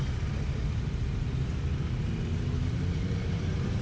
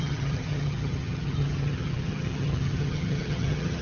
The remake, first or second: second